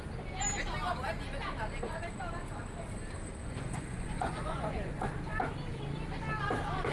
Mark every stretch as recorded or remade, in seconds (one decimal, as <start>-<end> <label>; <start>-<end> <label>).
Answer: 0.0-3.4 recorded; 3.4-5.0 remade; 5.0-6.9 recorded